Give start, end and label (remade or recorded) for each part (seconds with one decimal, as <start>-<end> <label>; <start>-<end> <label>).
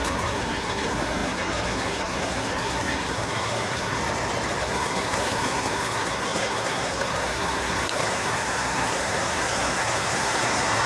0.0-4.0 remade; 4.0-4.6 recorded; 4.6-10.9 remade